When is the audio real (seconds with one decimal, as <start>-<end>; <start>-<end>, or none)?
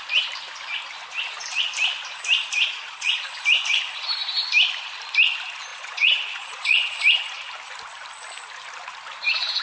0.0-2.6; 3.3-5.7; 7.0-9.6